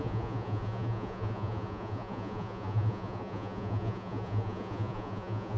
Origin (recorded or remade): remade